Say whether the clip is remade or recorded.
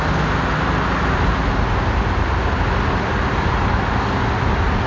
recorded